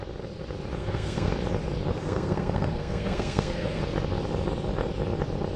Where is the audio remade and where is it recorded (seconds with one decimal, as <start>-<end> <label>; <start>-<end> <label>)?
0.0-0.8 recorded; 0.8-1.3 remade; 1.3-1.9 recorded; 1.9-3.8 remade; 3.8-5.6 recorded